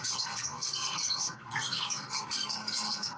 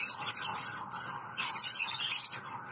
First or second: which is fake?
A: first